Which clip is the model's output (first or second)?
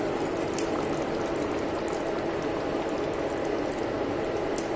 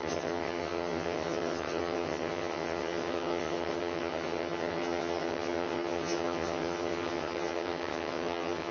second